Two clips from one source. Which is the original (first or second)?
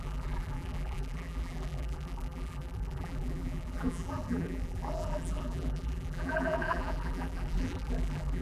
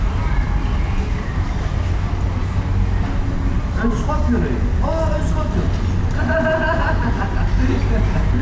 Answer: second